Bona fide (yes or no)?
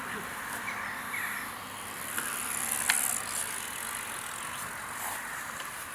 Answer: yes